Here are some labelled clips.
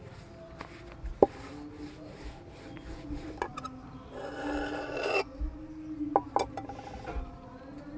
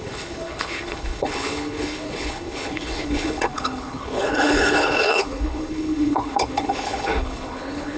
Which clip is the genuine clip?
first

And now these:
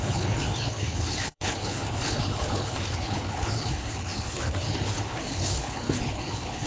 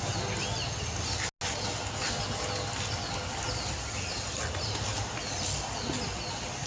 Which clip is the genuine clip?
second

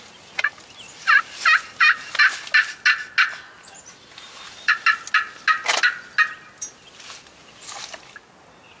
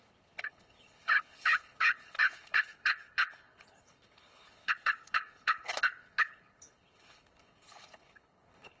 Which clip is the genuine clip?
first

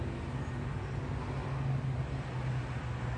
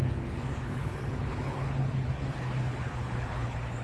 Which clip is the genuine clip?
first